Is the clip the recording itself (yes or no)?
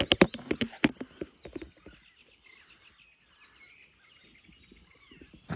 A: yes